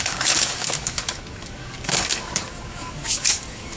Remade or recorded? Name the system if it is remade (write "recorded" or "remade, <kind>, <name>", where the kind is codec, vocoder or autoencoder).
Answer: remade, codec, DAC